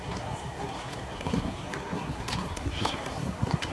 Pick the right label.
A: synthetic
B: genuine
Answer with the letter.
A